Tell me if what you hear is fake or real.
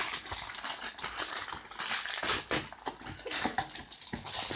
real